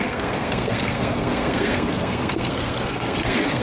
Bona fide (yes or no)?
no